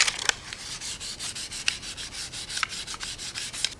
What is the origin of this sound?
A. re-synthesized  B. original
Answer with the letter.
B